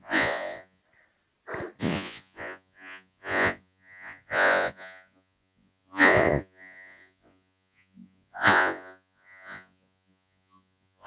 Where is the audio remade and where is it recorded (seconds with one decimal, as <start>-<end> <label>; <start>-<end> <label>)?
0.0-0.8 remade; 0.8-1.8 recorded; 1.8-11.1 remade